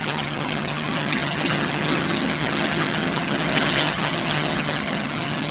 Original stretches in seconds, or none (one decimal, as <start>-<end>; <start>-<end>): none